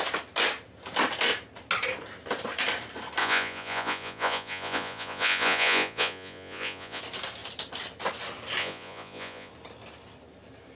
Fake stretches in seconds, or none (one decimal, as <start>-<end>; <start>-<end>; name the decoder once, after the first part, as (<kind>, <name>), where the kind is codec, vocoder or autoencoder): 3.2-7.0 (vocoder, Vocos); 8.6-9.5